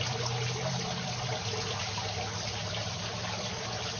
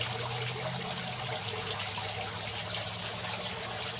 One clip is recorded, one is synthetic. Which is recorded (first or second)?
second